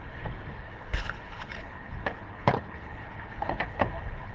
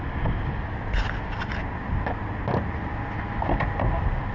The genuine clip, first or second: second